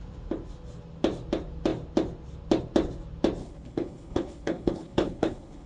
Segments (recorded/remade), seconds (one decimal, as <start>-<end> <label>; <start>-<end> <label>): 0.0-3.4 recorded; 3.4-5.7 remade